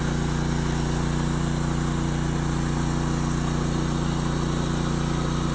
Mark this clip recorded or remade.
recorded